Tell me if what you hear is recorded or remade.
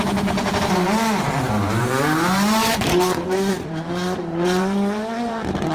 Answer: remade